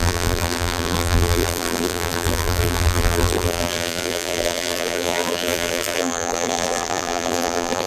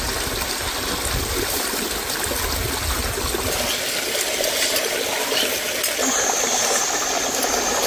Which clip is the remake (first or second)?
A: first